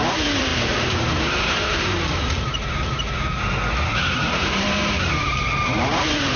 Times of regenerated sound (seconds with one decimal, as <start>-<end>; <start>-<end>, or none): 0.0-6.4